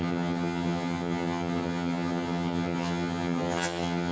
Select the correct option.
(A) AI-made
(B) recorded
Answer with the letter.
A